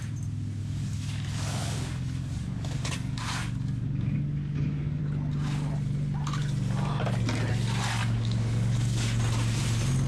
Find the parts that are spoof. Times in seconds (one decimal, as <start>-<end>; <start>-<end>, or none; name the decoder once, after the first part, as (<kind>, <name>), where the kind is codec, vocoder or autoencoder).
0.6-5.0 (codec, DAC); 8.0-9.2